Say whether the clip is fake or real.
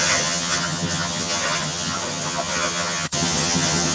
fake